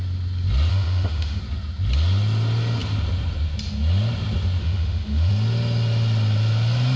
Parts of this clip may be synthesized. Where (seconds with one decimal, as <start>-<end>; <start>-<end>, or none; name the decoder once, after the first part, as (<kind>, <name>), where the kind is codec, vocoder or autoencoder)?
0.7-1.4 (autoencoder, DAC-VAE); 4.6-5.3